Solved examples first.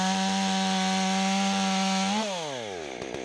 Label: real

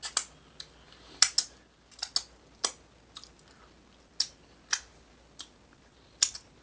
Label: real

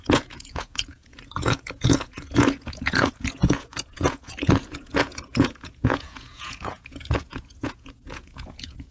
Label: fake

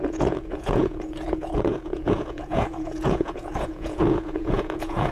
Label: fake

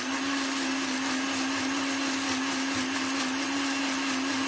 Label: real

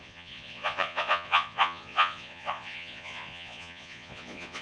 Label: fake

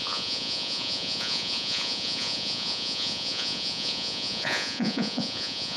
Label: fake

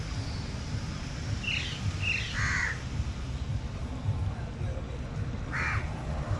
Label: real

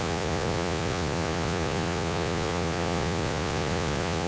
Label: fake